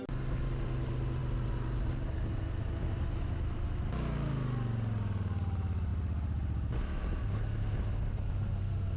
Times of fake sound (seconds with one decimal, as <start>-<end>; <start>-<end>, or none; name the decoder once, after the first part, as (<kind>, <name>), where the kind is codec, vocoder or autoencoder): none